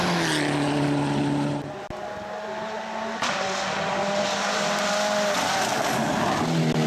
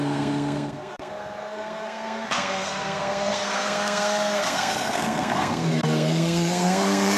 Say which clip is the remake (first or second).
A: second